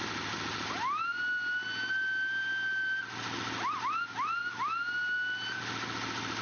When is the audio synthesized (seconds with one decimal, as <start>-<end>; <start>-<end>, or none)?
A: none